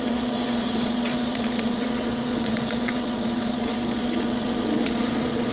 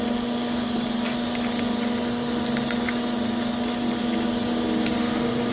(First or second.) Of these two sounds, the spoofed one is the first